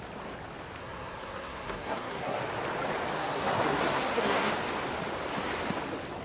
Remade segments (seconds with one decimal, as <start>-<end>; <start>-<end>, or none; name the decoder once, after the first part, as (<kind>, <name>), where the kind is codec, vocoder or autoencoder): 0.8-2.4 (codec, SNAC); 3.2-4.5